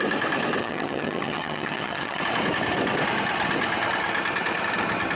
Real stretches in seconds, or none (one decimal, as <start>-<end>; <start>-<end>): 0.0-0.6; 2.2-5.2